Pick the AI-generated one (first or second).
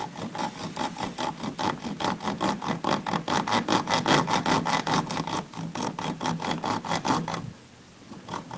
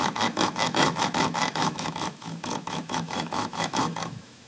second